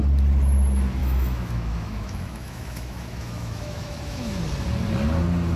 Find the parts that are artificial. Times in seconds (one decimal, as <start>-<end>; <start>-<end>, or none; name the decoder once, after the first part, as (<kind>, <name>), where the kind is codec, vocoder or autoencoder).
1.0-4.4 (autoencoder, DAC-VAE)